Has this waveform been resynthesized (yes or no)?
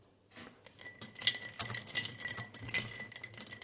no